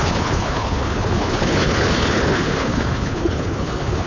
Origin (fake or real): fake